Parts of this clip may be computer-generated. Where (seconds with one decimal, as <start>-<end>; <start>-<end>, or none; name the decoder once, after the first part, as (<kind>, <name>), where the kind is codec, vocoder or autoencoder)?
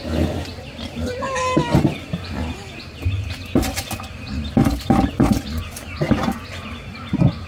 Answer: none